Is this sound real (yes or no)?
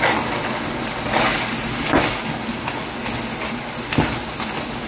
yes